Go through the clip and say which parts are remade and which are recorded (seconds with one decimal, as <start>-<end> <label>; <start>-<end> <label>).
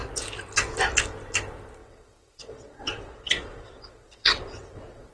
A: 0.0-1.8 recorded; 1.8-5.1 remade